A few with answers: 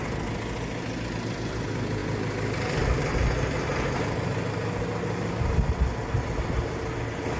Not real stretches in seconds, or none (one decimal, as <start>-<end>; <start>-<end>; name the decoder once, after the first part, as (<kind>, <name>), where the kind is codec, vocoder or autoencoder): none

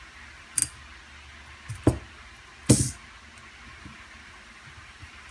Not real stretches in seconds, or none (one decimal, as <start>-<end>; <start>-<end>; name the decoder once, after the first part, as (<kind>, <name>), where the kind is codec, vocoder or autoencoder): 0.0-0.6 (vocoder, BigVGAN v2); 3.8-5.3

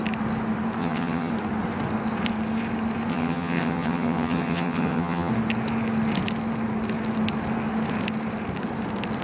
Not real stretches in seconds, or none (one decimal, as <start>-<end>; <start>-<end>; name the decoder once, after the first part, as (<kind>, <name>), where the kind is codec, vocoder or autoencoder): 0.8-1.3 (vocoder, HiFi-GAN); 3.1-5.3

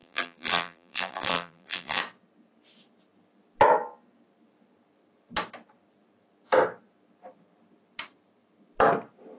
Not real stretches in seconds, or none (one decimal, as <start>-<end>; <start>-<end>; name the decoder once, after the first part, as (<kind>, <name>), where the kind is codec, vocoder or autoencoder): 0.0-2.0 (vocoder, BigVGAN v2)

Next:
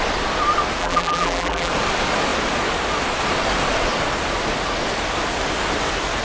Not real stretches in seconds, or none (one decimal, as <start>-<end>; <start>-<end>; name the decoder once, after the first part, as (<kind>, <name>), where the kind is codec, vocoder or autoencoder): 0.8-1.7 (vocoder, BigVGAN v2)

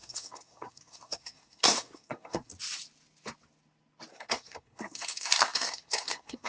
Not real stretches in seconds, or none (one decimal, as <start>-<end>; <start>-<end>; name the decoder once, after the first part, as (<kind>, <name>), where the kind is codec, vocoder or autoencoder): 0.0-2.5 (codec, SNAC); 4.1-6.5

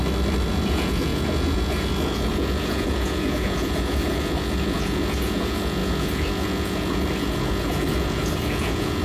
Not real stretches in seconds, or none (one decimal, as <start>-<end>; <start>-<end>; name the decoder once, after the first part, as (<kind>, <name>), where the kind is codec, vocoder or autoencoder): 0.5-9.0 (vocoder, Vocos)

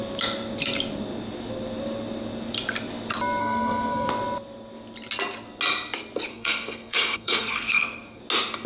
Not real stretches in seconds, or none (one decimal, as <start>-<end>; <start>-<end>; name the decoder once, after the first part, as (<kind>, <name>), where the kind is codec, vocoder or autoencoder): 3.4-4.1 (codec, SNAC); 6.3-8.2